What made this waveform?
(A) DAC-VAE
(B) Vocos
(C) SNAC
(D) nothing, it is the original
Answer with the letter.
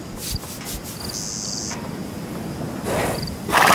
D